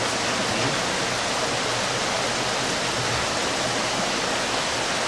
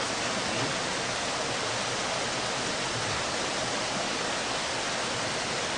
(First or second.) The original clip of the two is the first